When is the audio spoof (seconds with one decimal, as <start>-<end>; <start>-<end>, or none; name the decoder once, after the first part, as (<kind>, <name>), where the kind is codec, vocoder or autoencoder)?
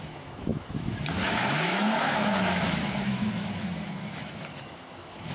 0.0-5.3 (autoencoder, DAC-VAE)